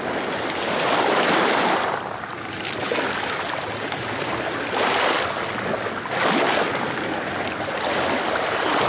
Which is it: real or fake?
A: real